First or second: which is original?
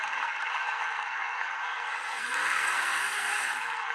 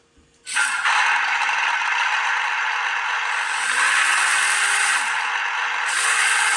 second